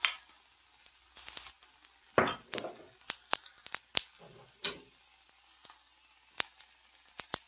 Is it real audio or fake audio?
real